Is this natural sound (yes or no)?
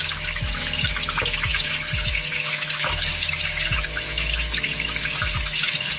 no